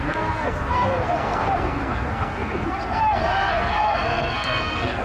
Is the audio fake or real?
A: fake